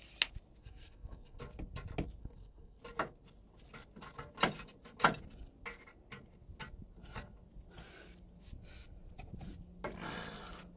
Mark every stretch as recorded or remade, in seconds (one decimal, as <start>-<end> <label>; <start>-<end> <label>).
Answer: 0.0-0.6 recorded; 0.6-1.4 remade; 1.4-2.2 recorded; 2.2-2.8 remade; 2.8-10.8 recorded